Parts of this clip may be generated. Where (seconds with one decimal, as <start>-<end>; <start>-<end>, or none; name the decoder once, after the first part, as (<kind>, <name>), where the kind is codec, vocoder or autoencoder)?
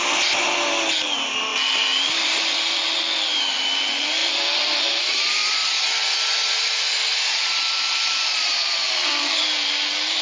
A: 1.5-3.4 (vocoder, BigVGAN v2); 4.2-4.8; 5.4-9.4